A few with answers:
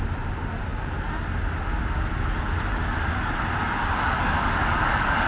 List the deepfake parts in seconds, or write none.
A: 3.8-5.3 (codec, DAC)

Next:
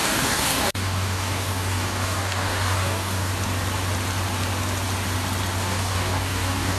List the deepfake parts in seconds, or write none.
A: 0.0-3.3 (codec, DAC); 5.6-6.8

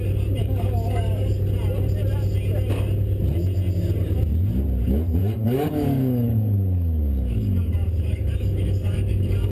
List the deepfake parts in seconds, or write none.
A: 0.4-1.4 (codec, DAC); 5.2-9.5

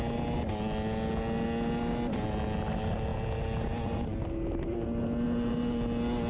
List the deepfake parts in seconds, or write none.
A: none

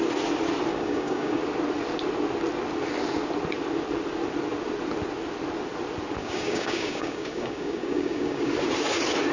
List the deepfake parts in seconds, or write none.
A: 0.7-1.4 (codec, DAC); 6.2-8.5